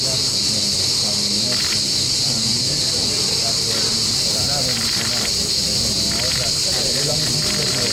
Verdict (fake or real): real